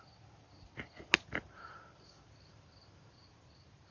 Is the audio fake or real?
real